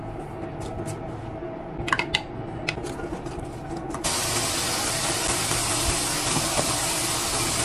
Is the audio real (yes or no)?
yes